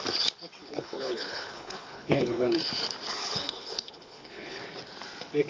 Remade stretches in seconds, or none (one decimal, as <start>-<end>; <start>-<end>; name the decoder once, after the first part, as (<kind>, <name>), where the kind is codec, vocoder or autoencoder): 0.6-2.7 (codec, HILCodec); 3.1-4.6